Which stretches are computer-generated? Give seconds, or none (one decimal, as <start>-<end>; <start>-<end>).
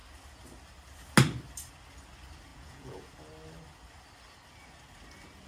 2.5-3.1